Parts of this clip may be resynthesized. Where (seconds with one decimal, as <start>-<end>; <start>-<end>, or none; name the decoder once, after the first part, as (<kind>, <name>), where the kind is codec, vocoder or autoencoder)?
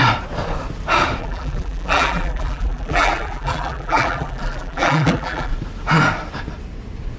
1.2-5.5 (vocoder, BigVGAN v2)